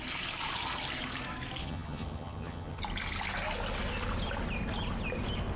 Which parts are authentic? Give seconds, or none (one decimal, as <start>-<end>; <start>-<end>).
0.0-1.6; 2.8-5.6

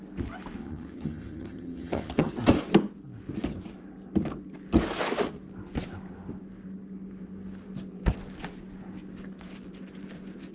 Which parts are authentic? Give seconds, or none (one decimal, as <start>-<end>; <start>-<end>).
0.0-0.6; 2.3-10.5

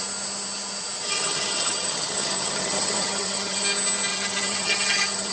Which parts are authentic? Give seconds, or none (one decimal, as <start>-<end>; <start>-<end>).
0.0-1.0; 3.6-4.1

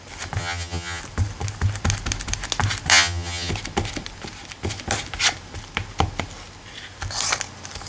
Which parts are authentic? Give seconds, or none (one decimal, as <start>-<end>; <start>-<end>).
0.0-0.4; 1.0-2.9; 3.5-7.9